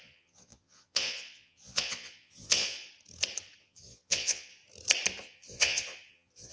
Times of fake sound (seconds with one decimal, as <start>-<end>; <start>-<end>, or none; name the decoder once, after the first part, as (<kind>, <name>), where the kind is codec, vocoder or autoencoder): 0.0-2.9 (vocoder, Vocos); 3.6-4.6; 5.2-6.5